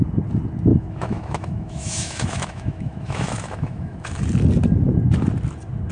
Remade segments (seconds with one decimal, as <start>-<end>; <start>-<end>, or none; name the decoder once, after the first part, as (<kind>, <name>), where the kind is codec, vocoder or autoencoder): 0.7-4.2 (autoencoder, DAC-VAE)